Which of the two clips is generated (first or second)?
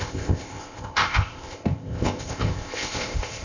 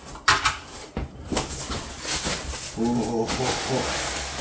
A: first